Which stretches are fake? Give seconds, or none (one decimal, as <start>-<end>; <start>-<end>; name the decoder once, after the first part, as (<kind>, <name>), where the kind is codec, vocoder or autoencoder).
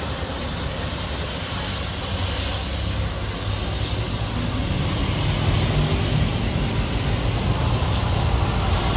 none